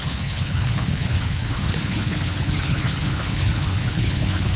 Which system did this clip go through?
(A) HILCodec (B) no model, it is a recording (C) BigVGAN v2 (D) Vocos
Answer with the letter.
A